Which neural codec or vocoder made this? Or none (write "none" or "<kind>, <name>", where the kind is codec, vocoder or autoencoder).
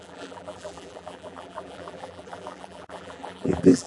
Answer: vocoder, BigVGAN v2